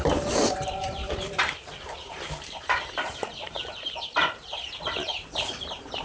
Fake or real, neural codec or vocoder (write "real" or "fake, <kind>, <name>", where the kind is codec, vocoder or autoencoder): fake, vocoder, BigVGAN v2